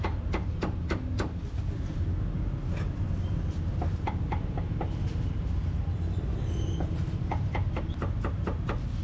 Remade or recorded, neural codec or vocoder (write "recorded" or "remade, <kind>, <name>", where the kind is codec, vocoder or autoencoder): recorded